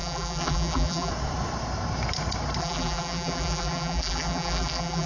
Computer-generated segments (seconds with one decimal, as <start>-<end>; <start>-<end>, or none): 0.0-1.1; 2.6-5.1